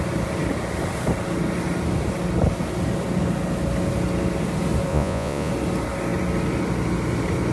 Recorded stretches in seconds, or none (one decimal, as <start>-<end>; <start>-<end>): 0.0-4.9; 5.5-7.5